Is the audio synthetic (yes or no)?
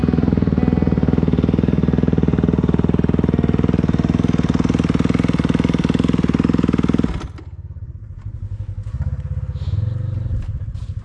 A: no